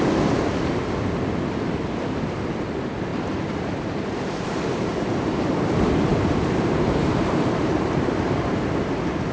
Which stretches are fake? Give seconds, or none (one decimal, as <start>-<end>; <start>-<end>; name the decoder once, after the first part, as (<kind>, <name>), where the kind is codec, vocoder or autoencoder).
3.1-5.0 (vocoder, BigVGAN v2); 6.1-8.6